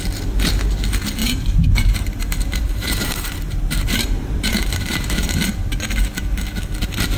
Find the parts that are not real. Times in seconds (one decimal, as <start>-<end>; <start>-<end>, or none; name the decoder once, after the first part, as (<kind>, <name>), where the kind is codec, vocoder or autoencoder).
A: 1.2-5.4 (vocoder, BigVGAN v2)